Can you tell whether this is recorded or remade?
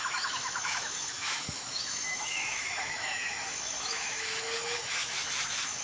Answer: remade